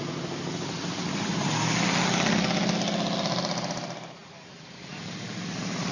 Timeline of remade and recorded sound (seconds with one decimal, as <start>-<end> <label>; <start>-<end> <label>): 0.0-5.9 recorded